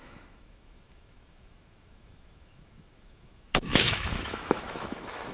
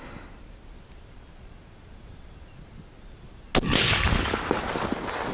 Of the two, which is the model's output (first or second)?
first